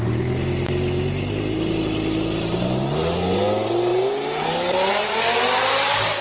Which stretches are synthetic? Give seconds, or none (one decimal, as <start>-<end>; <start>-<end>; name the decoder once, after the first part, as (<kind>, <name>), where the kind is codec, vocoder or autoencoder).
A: none